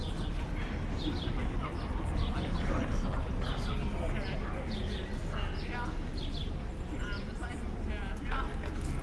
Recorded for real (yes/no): yes